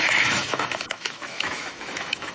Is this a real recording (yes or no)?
no